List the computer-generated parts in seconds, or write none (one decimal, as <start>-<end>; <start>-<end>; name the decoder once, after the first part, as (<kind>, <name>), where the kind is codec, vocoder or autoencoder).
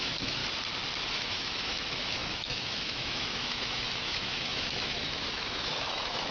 0.0-0.4 (autoencoder, DAC-VAE); 1.1-6.3